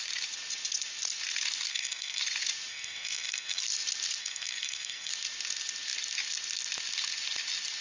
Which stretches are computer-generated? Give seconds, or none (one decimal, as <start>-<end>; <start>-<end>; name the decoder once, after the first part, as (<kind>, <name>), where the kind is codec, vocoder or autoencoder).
1.7-2.2 (codec, SNAC); 2.7-3.6; 4.2-5.1